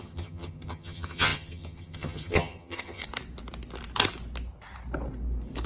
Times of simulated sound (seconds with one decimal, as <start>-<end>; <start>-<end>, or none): 0.0-3.0